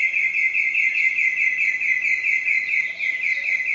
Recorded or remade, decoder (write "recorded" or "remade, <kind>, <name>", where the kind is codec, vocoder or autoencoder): recorded